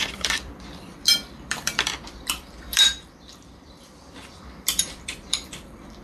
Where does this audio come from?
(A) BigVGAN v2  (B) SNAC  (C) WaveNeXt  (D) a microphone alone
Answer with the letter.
A